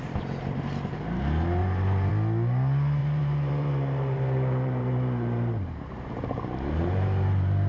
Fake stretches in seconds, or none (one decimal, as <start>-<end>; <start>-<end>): 1.6-2.1; 3.0-7.7